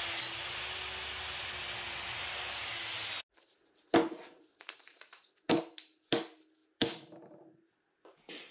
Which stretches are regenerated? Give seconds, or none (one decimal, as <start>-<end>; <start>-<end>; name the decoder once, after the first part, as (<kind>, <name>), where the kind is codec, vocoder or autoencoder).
none